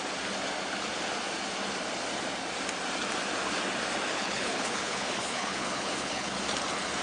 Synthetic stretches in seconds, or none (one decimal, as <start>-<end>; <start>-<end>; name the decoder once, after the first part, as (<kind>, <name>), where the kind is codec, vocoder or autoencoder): 4.1-6.4 (codec, HILCodec)